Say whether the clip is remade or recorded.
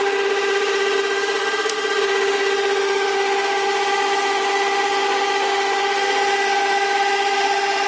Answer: recorded